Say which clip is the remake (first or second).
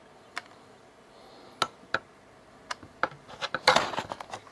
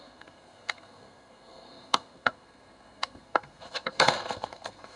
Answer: second